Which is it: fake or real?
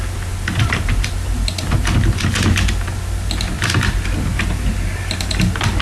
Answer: real